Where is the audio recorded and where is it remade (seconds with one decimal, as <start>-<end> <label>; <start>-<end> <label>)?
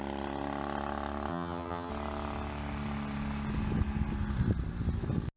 0.0-1.3 recorded; 1.3-1.9 remade; 1.9-5.4 recorded